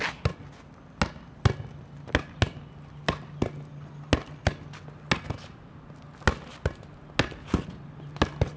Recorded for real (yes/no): yes